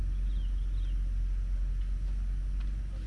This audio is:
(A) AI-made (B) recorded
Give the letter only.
B